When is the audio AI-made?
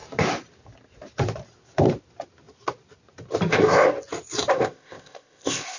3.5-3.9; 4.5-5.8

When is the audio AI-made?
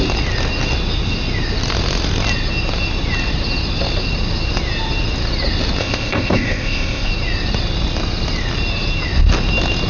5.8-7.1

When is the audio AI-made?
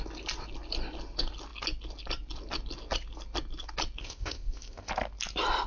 4.0-4.9